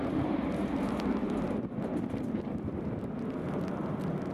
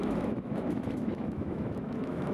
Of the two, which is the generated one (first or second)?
second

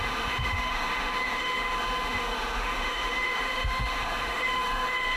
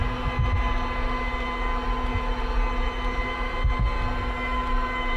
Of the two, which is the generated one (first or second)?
first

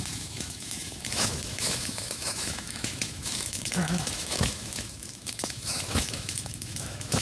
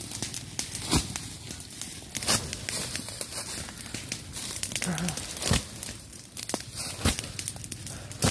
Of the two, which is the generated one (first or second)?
first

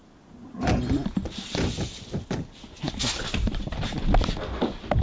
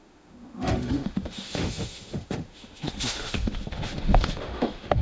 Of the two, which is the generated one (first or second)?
second